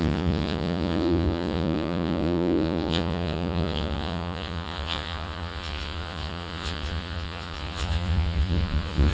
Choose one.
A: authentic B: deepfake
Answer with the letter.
B